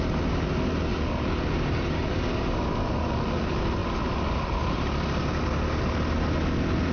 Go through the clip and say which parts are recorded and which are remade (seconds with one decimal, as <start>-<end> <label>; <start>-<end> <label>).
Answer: 0.0-3.8 recorded; 3.8-5.4 remade; 5.4-6.9 recorded